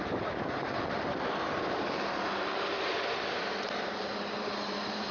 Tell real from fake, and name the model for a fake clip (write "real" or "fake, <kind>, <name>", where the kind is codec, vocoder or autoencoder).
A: fake, vocoder, BigVGAN v2